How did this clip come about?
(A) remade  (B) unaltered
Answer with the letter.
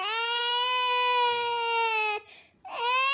B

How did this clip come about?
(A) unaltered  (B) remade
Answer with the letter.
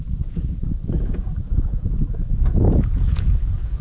B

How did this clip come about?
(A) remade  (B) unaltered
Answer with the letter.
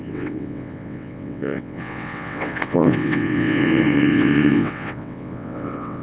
A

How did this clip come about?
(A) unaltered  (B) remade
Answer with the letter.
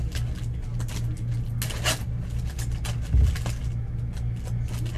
A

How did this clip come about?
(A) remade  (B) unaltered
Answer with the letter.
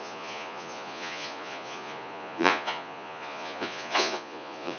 A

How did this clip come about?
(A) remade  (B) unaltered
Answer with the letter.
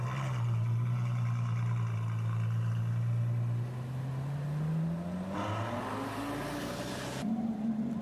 B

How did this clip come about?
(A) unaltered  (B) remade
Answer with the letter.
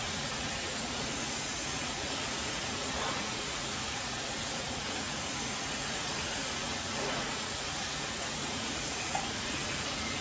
B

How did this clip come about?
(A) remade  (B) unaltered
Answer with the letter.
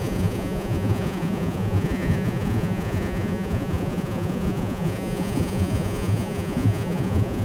A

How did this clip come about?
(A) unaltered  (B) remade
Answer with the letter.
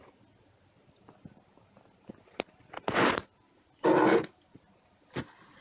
A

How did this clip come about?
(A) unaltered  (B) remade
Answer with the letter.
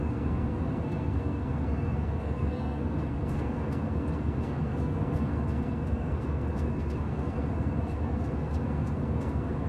B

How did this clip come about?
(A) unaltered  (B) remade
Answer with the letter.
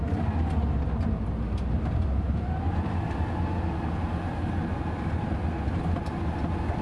A